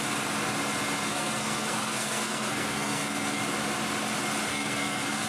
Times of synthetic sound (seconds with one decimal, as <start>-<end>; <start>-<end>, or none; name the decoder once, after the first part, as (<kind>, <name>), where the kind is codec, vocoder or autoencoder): 1.1-3.4 (codec, SNAC); 4.5-5.3